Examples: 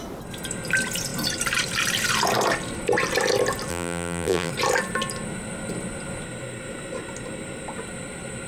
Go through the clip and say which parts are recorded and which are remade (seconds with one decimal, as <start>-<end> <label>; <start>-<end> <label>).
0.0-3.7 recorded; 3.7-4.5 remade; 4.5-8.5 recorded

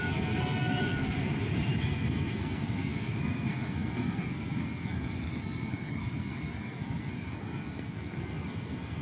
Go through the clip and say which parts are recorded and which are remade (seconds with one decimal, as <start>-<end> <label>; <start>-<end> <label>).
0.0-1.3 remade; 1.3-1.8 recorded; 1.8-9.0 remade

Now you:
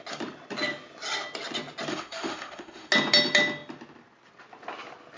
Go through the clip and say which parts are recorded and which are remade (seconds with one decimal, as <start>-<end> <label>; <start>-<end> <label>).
0.0-1.9 recorded; 1.9-2.9 remade; 2.9-5.2 recorded

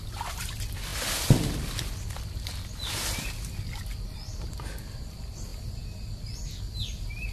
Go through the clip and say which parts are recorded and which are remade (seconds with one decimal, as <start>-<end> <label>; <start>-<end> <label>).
0.0-7.3 recorded